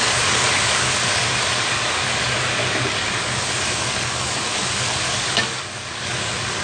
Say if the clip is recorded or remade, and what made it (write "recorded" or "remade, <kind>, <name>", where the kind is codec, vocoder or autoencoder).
remade, codec, DAC